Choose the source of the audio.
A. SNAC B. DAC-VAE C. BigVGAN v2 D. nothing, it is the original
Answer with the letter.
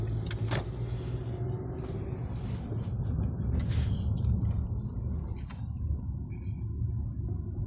D